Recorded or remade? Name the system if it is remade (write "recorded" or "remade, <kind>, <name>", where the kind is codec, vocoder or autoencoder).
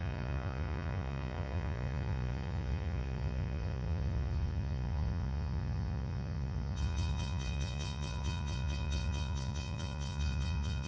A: remade, vocoder, Vocos